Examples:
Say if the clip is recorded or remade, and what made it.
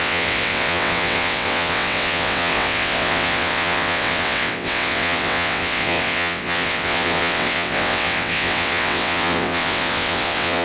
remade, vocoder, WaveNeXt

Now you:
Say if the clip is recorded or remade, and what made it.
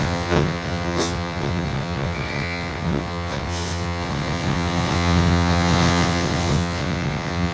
remade, vocoder, WaveNeXt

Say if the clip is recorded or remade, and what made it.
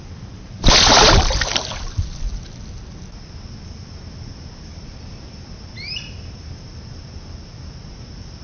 recorded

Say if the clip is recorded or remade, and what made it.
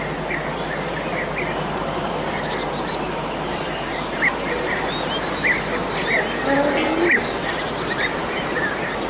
recorded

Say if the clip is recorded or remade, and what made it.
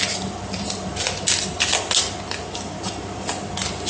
recorded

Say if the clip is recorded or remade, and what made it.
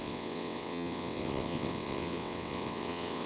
remade, vocoder, WaveNeXt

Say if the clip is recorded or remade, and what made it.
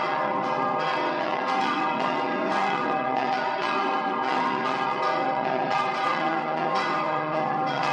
remade, vocoder, WaveNeXt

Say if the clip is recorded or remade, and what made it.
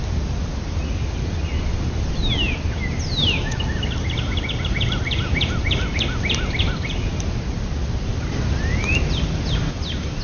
recorded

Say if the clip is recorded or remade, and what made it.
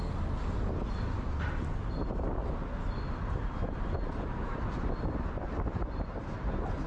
recorded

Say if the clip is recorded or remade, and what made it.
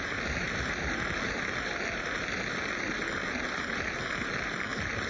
recorded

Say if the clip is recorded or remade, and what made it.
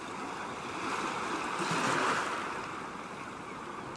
recorded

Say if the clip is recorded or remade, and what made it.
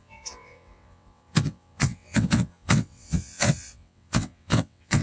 remade, vocoder, WaveNeXt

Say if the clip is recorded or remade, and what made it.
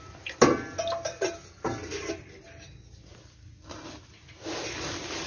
recorded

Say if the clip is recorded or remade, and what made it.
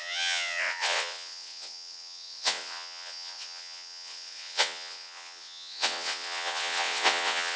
remade, vocoder, WaveNeXt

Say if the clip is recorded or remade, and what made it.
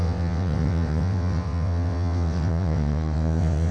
remade, vocoder, WaveNeXt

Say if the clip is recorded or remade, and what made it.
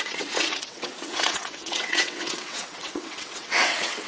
remade, vocoder, WaveNeXt